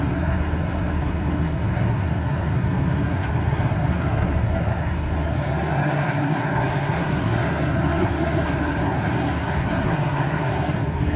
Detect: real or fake fake